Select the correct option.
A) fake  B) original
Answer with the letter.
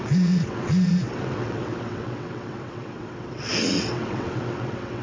A